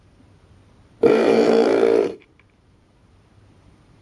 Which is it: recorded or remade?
remade